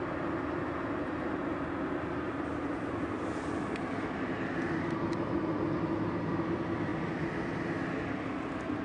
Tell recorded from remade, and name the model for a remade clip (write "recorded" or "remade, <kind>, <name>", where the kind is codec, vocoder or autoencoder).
recorded